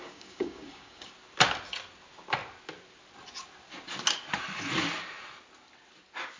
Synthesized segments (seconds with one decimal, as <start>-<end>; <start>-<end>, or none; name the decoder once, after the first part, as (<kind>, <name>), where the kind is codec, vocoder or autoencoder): 0.0-1.1 (codec, DAC)